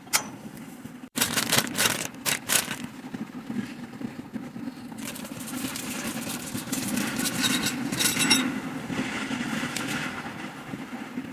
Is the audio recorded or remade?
remade